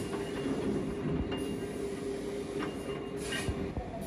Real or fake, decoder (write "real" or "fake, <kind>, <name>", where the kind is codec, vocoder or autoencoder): real